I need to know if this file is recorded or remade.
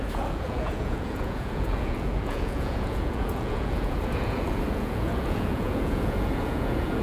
remade